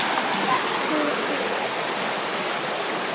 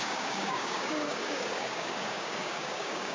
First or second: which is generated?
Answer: second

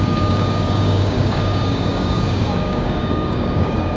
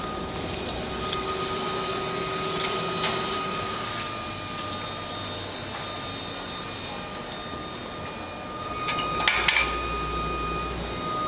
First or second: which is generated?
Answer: first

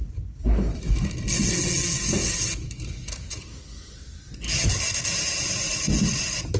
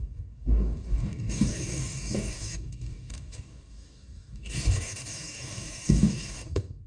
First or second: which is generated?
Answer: second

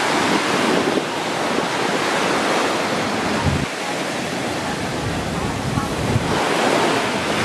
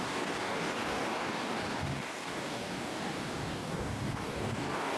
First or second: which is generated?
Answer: second